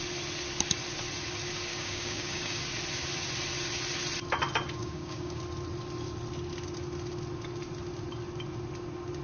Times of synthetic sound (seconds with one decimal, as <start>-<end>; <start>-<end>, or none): 1.7-2.6; 4.8-5.4